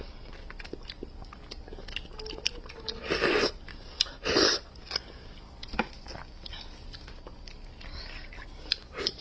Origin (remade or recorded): recorded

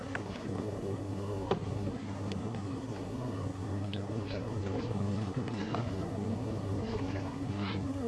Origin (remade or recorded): remade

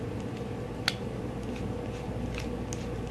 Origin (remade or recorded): recorded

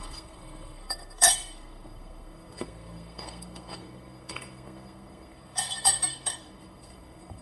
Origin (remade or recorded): remade